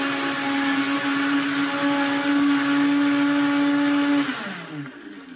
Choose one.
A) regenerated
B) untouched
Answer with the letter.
B